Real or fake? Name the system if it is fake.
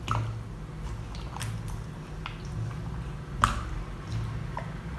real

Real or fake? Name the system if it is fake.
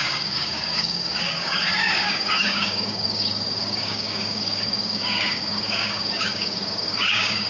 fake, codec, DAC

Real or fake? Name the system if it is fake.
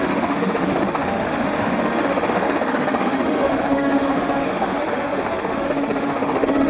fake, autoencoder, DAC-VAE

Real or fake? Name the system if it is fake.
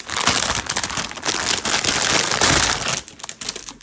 real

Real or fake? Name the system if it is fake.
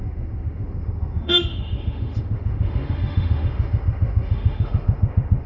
fake, autoencoder, DAC-VAE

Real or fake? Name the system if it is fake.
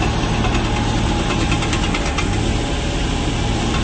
real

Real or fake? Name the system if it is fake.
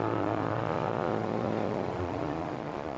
fake, vocoder, Vocos